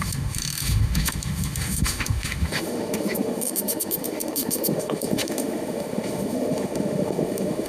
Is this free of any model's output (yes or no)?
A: no